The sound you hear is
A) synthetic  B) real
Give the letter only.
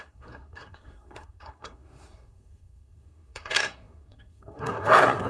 A